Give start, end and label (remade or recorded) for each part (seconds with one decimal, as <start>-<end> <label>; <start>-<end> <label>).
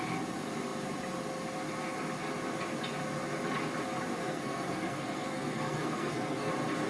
0.0-4.3 recorded; 4.3-6.5 remade; 6.5-6.9 recorded